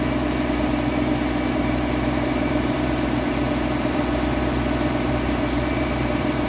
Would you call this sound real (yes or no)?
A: no